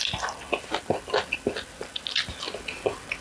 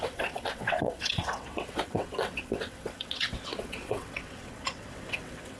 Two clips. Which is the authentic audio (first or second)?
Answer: first